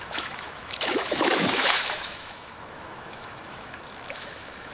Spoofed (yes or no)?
yes